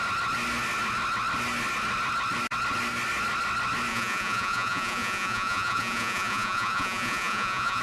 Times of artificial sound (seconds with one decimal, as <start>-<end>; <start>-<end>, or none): 3.9-7.8